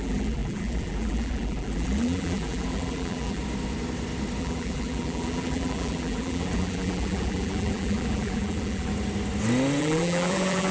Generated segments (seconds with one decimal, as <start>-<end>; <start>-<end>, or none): 0.0-3.4; 4.4-8.9; 9.8-10.7